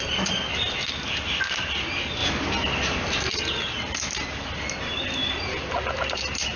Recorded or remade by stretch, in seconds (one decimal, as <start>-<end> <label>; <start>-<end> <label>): 0.0-6.6 recorded